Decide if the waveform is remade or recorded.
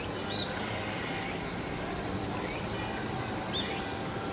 recorded